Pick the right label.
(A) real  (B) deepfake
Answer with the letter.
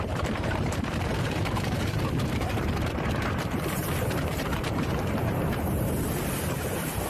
B